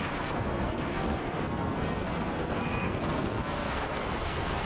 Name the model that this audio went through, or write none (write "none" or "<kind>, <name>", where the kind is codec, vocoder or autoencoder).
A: codec, SNAC